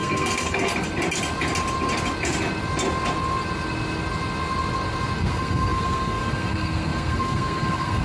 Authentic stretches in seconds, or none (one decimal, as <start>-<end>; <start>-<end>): 0.7-5.2